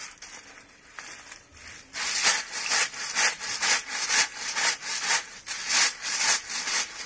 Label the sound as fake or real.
real